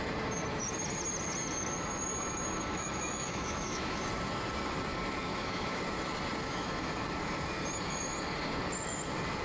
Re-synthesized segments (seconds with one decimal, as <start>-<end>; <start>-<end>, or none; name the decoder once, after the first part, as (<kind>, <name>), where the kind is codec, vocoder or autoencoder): 2.7-4.0 (autoencoder, DAC-VAE); 5.3-5.8; 6.4-6.9